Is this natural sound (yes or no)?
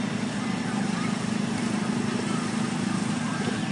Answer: yes